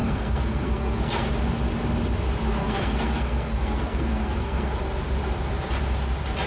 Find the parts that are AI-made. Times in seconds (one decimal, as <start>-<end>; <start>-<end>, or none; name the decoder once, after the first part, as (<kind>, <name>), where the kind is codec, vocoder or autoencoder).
0.0-1.3 (codec, SNAC); 2.6-4.8